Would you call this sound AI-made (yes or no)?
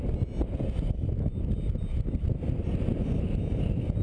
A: no